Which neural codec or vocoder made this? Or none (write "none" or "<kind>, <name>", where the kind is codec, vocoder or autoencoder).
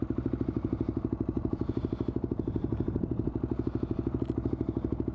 none